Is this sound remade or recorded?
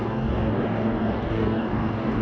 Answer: remade